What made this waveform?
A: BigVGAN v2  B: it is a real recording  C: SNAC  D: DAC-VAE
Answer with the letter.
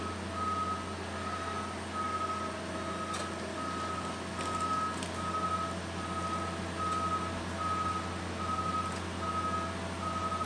B